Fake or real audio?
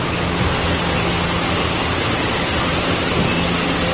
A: real